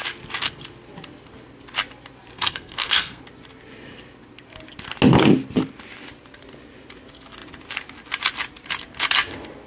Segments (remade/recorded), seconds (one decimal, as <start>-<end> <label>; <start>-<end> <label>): 0.0-2.3 recorded; 2.3-3.2 remade; 3.2-9.7 recorded